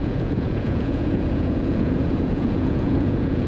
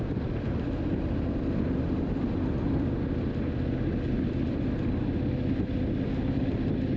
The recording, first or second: second